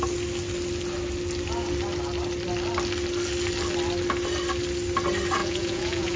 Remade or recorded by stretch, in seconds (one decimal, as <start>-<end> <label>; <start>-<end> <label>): 0.0-5.4 recorded; 5.4-6.2 remade